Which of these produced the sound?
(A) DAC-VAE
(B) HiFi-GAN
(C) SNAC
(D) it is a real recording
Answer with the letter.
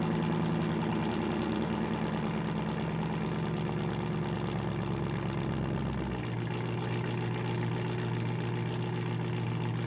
D